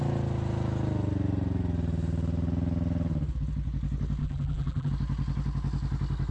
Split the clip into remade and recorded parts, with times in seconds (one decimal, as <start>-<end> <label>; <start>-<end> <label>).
0.0-4.2 recorded; 4.2-4.9 remade; 4.9-6.3 recorded